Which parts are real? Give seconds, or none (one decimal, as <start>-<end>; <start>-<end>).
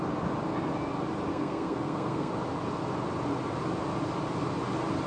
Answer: 0.0-1.3; 2.3-5.1